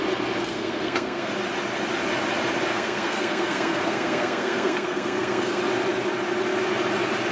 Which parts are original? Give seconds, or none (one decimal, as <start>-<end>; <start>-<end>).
0.0-0.4; 1.3-2.7; 5.6-7.3